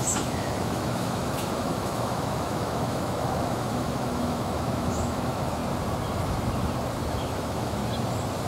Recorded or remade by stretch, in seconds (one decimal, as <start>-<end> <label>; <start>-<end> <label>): 0.0-5.6 remade; 5.6-7.1 recorded; 7.1-7.8 remade; 7.8-8.5 recorded